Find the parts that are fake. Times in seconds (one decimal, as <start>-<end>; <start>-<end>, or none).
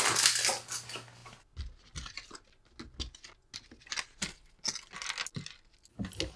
none